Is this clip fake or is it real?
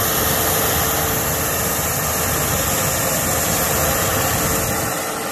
real